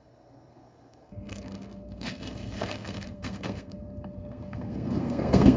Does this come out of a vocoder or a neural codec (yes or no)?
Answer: yes